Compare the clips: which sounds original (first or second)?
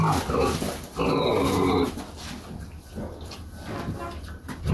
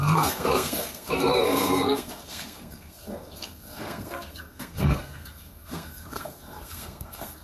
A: first